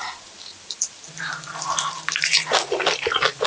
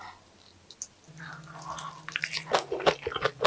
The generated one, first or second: first